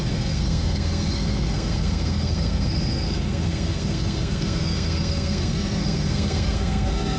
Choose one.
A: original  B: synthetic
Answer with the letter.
B